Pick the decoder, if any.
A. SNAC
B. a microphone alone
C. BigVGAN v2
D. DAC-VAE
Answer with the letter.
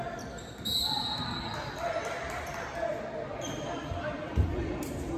B